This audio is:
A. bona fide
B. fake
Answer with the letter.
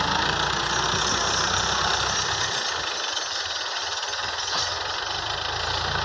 A